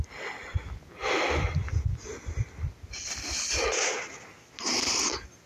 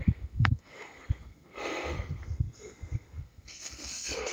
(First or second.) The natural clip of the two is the first